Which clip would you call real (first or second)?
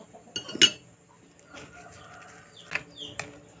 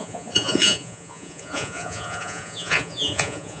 first